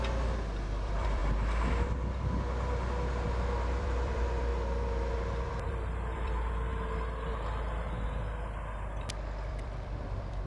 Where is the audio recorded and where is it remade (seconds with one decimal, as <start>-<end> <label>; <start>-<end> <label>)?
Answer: 0.0-1.2 remade; 1.2-3.7 recorded; 3.7-4.5 remade; 4.5-5.1 recorded; 5.1-6.7 remade; 6.7-9.5 recorded; 9.5-10.5 remade